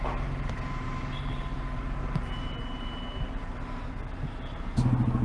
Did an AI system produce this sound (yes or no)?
no